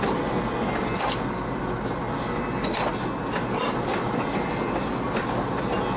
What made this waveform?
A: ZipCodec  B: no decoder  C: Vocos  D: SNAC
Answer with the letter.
B